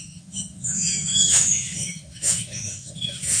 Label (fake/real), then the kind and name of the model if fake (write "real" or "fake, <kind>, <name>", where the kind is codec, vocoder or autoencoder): fake, autoencoder, DAC-VAE